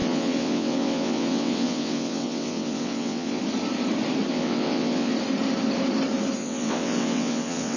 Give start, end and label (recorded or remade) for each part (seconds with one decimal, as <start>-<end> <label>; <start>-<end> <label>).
0.0-3.4 remade; 3.4-4.3 recorded; 4.3-5.1 remade; 5.1-6.4 recorded; 6.4-7.8 remade